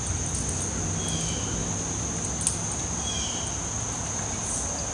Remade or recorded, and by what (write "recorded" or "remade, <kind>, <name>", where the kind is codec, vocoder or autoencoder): recorded